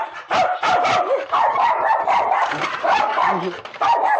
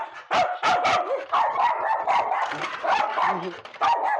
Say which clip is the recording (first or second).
second